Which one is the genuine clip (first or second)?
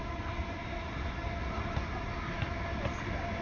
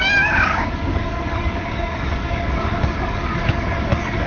first